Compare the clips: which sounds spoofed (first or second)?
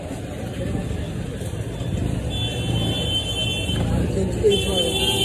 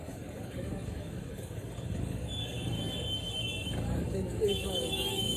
second